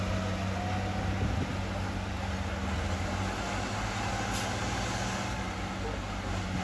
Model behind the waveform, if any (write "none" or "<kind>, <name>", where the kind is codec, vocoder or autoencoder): none